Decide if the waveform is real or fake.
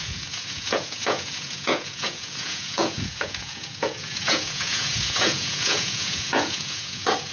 fake